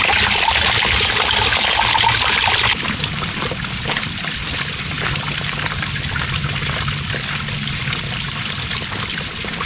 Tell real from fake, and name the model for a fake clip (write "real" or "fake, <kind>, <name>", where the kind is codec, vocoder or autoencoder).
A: real